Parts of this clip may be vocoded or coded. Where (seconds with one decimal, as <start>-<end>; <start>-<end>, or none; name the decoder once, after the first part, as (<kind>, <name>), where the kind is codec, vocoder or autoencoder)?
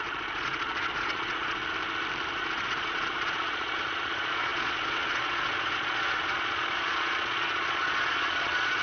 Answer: 0.0-1.6 (vocoder, Vocos); 2.3-8.8